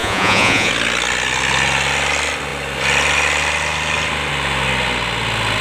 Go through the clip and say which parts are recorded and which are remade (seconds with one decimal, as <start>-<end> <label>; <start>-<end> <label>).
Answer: 0.0-0.7 remade; 0.7-5.6 recorded

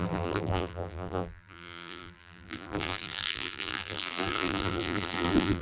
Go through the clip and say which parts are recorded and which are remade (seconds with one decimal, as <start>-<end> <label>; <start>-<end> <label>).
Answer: 0.0-5.6 remade

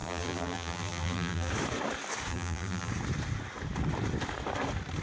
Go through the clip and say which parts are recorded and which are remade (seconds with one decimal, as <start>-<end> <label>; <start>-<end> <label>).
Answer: 0.0-1.5 remade; 1.5-2.3 recorded; 2.3-2.9 remade; 2.9-5.0 recorded

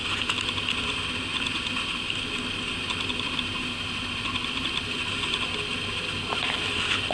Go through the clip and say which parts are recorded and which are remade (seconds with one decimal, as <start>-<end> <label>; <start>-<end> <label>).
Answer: 0.0-7.1 recorded